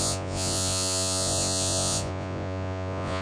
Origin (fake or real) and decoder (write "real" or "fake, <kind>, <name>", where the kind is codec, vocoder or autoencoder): fake, vocoder, Vocos